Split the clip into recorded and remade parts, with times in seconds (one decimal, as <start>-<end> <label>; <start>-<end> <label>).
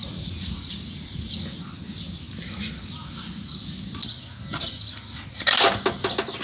0.0-1.3 remade; 1.3-6.4 recorded